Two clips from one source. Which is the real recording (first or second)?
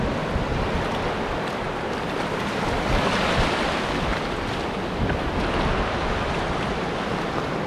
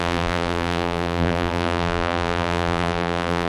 first